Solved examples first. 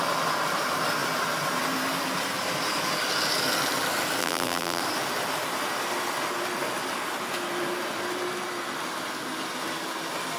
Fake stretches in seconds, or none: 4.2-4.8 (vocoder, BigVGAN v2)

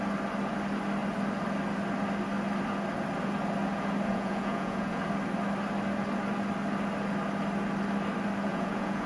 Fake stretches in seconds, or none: 4.1-5.0 (vocoder, Vocos); 8.5-9.1

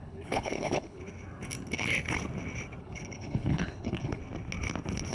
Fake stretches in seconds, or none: 0.0-1.0 (codec, HILCodec); 2.8-4.2

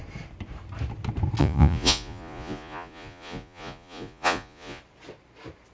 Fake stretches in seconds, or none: 1.4-4.8 (vocoder, Vocos)

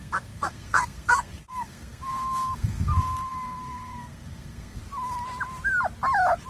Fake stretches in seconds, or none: 0.0-4.8 (codec, SNAC)